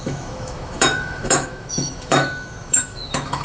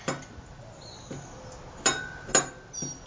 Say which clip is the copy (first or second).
first